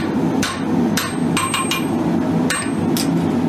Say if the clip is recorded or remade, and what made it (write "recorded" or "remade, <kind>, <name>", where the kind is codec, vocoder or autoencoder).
recorded